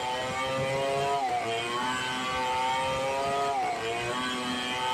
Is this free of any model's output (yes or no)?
yes